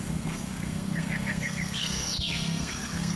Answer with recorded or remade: remade